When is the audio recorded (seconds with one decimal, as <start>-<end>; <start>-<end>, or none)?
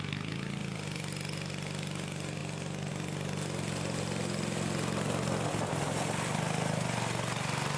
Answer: 0.0-7.8